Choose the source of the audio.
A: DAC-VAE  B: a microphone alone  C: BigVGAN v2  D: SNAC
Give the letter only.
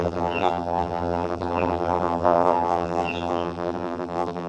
C